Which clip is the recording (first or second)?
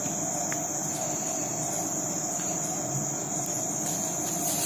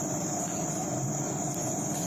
first